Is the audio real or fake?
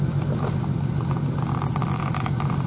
real